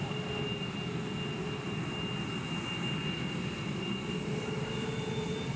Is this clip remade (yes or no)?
no